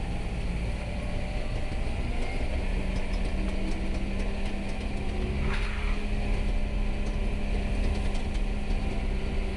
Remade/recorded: recorded